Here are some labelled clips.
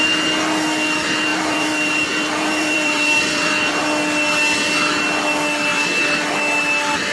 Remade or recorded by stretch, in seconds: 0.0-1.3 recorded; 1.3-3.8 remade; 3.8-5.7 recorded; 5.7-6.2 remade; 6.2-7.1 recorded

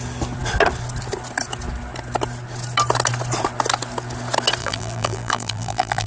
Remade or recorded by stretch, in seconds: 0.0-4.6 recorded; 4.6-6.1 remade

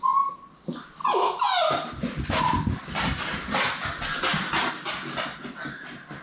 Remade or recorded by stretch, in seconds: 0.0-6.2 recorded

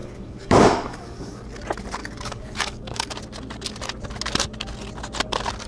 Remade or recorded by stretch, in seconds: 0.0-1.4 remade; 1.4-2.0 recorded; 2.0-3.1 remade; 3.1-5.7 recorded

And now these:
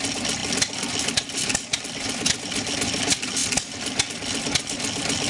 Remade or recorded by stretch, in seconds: 0.0-5.3 recorded